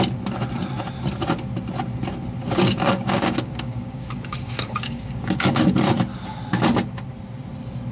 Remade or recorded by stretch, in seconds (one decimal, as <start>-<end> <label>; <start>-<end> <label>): 0.0-2.6 recorded; 2.6-5.7 remade; 5.7-7.9 recorded